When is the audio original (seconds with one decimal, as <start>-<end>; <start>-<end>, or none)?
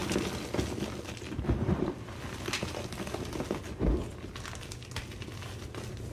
0.0-6.1